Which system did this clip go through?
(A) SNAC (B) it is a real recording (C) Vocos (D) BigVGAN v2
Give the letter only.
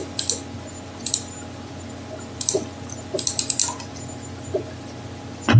B